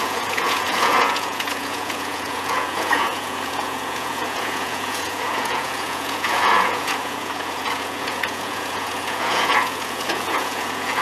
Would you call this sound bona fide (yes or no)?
no